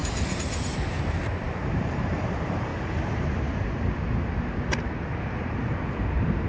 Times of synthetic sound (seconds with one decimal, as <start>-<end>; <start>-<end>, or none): 0.0-2.7; 5.4-6.5